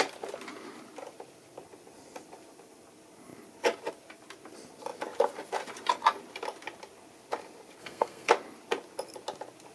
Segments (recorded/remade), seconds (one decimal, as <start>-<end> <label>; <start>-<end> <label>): 0.0-7.8 recorded; 7.8-8.3 remade; 8.3-9.7 recorded